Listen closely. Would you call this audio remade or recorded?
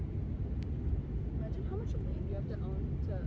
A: recorded